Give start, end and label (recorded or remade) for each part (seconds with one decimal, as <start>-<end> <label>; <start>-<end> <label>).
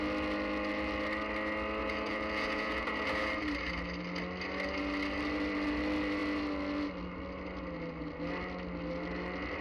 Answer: 0.0-1.8 recorded; 1.8-3.3 remade; 3.3-9.6 recorded